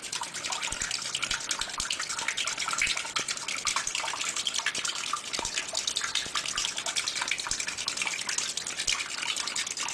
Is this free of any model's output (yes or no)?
yes